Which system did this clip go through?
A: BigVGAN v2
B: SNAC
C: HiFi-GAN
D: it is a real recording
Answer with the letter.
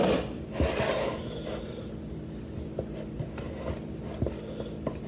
D